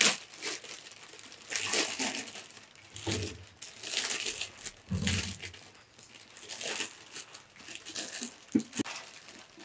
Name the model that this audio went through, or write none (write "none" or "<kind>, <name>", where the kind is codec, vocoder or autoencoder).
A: none